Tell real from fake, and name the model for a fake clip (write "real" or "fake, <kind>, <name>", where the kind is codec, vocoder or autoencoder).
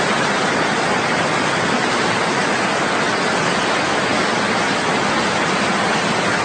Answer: real